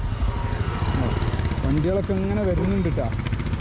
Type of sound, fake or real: real